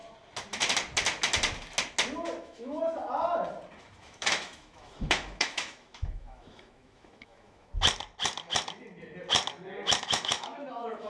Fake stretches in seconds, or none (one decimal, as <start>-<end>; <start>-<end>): 2.4-2.8; 3.8-7.7; 10.0-11.1

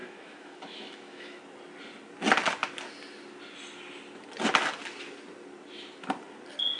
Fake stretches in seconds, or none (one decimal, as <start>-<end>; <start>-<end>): 0.0-1.4

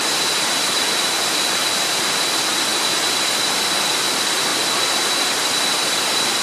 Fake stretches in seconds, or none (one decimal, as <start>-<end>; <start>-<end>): 0.0-1.6; 2.2-2.7; 3.8-4.5; 5.2-6.4

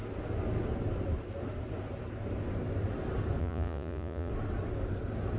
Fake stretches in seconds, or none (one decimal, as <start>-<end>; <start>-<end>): 3.4-4.3

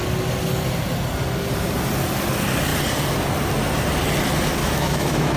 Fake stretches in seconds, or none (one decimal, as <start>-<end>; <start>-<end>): 4.6-5.4

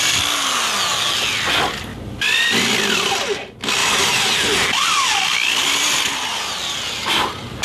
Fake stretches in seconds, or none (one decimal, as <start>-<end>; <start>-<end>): 1.9-3.1; 3.8-6.6

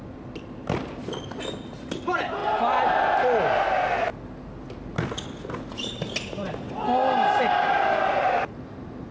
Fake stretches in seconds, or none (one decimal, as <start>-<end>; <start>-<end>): none